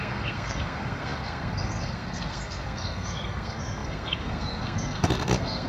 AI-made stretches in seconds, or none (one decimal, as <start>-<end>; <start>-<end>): 0.0-5.7